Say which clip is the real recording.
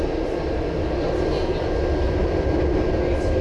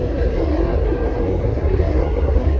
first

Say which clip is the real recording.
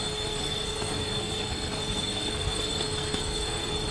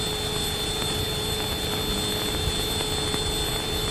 second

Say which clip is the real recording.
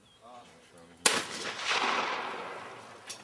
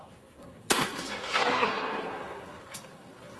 first